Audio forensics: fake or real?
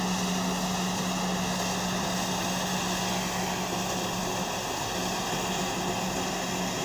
real